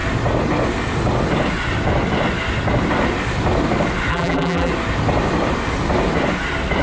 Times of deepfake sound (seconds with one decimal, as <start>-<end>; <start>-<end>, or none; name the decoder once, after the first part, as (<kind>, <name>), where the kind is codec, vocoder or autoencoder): 4.1-4.7 (vocoder, BigVGAN v2)

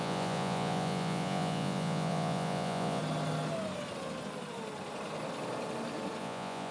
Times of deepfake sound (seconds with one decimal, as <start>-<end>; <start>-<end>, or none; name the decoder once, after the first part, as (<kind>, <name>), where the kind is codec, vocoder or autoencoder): 0.0-3.0 (vocoder, Vocos); 6.2-6.7

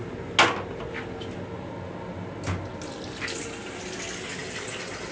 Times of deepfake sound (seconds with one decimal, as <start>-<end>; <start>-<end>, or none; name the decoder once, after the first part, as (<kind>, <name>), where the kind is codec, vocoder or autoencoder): none

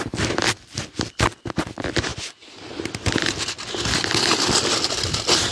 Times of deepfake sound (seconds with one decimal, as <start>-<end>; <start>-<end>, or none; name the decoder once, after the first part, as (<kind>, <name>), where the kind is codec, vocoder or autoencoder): none

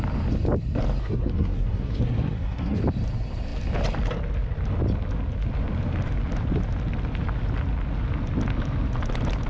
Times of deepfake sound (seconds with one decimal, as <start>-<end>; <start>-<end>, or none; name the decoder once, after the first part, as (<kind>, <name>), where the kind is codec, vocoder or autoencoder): 1.0-2.8 (codec, SNAC)